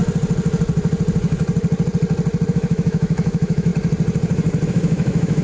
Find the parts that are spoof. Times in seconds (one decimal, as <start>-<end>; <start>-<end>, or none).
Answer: 2.5-3.7; 4.7-5.4